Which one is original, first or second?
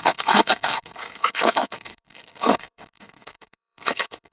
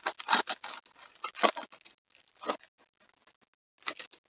second